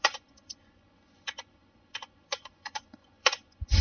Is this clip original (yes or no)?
no